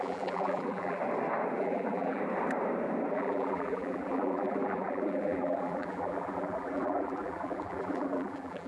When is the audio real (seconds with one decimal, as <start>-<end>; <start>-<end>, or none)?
1.0-1.6; 2.2-3.1